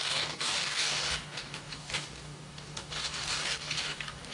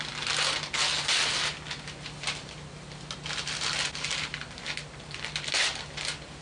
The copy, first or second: first